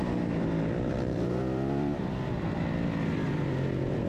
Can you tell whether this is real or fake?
fake